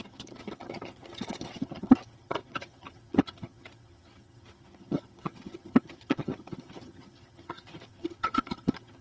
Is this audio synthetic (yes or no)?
yes